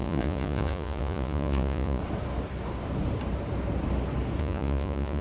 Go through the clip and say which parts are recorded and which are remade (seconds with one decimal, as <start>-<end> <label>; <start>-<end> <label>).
0.0-2.0 remade; 2.0-4.4 recorded; 4.4-5.2 remade